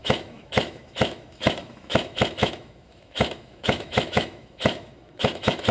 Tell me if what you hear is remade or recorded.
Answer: remade